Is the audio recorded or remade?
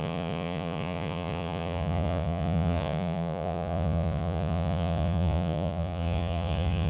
remade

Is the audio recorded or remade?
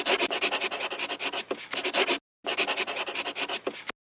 recorded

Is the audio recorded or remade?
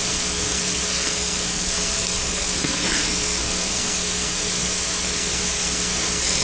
remade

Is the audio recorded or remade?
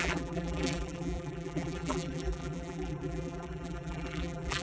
remade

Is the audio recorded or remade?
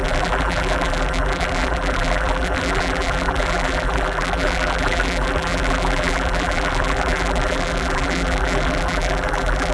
remade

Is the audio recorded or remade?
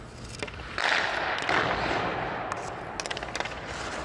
recorded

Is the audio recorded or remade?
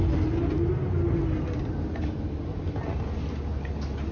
recorded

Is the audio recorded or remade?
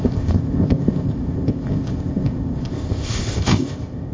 remade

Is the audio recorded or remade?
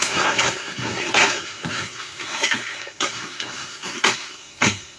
remade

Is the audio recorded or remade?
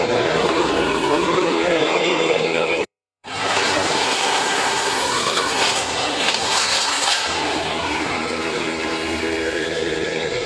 remade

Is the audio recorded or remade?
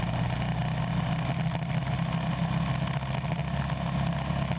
recorded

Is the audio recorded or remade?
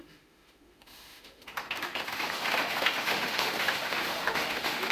remade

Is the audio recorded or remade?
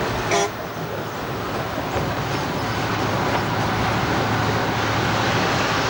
recorded